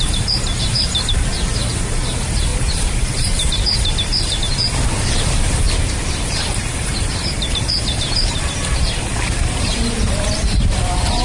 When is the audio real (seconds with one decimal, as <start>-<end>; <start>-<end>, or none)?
none